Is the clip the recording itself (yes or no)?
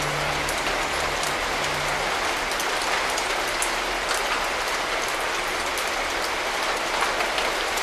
yes